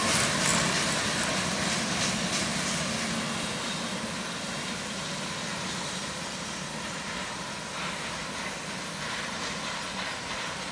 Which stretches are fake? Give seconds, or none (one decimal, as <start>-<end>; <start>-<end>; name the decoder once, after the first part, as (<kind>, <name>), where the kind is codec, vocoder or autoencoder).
0.0-10.7 (vocoder, BigVGAN v2)